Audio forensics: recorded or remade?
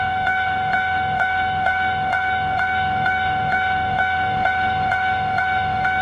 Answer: remade